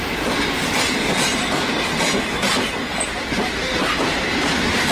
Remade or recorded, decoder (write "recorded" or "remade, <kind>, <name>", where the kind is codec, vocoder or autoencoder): recorded